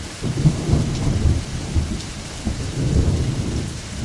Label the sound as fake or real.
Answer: fake